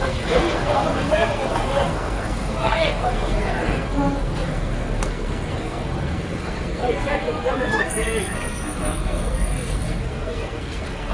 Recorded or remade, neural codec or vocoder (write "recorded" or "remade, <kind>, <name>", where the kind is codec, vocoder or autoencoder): remade, codec, SNAC